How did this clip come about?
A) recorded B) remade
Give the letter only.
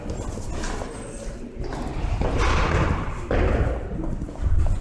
A